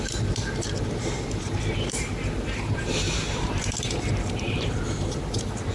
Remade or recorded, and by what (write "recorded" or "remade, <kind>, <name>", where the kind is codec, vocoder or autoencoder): remade, vocoder, BigVGAN v2